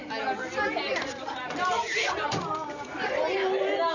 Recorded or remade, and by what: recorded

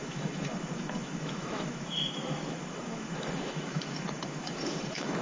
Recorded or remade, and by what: remade, autoencoder, DAC-VAE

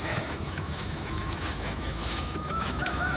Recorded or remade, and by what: remade, autoencoder, DAC-VAE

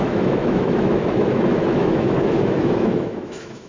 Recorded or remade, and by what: remade, autoencoder, DAC-VAE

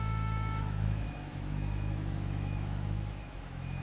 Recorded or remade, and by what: remade, autoencoder, DAC-VAE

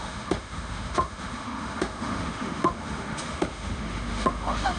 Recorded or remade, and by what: remade, autoencoder, DAC-VAE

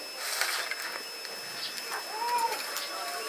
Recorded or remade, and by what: recorded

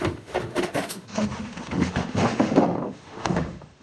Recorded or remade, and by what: remade, autoencoder, DAC-VAE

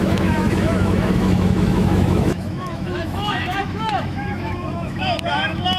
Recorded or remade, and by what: remade, autoencoder, DAC-VAE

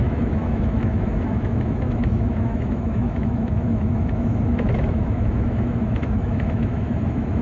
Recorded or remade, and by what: remade, autoencoder, DAC-VAE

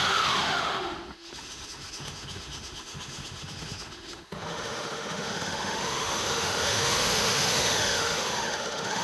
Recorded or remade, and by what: remade, autoencoder, DAC-VAE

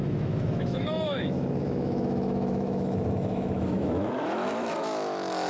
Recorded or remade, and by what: remade, autoencoder, DAC-VAE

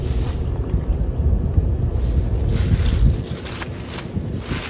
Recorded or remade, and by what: recorded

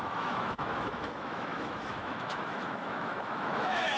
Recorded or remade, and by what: remade, autoencoder, DAC-VAE